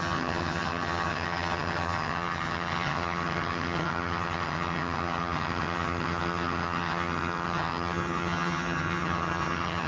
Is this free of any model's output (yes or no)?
no